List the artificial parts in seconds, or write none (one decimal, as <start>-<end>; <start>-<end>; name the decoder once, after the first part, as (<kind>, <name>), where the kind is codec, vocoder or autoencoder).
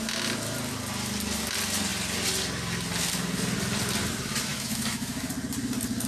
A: 4.5-5.3 (autoencoder, DAC-VAE)